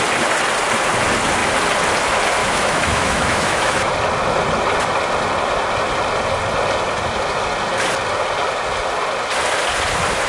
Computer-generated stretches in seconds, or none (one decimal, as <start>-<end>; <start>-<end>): 2.4-3.9